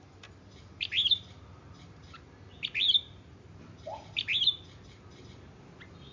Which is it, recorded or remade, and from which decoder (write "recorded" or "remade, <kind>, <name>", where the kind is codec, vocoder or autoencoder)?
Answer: recorded